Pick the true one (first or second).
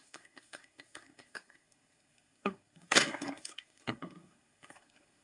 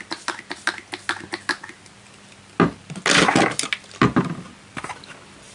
second